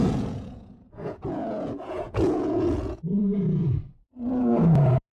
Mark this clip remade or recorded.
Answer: remade